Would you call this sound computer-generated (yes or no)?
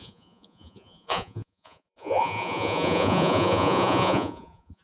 yes